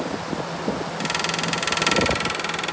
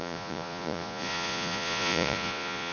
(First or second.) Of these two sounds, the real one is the first